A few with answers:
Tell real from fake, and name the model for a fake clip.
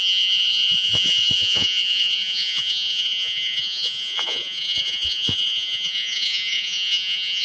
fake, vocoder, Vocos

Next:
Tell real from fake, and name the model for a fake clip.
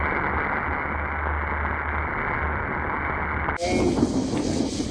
real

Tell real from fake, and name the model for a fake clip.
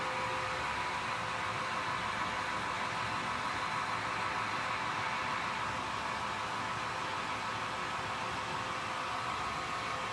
real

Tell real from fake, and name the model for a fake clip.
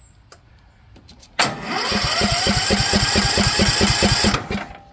real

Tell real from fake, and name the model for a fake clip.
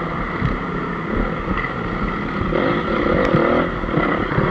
real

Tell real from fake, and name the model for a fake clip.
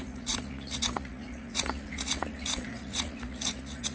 fake, vocoder, Vocos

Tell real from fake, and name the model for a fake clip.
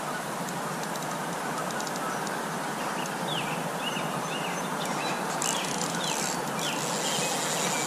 real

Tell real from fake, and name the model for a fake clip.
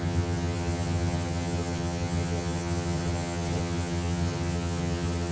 fake, vocoder, HiFi-GAN